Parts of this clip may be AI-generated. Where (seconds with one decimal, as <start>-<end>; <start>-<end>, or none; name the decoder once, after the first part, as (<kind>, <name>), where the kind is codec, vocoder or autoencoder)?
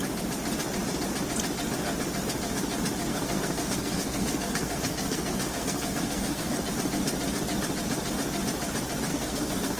3.1-6.7 (codec, SNAC); 9.1-9.8